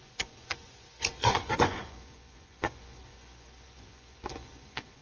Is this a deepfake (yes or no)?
yes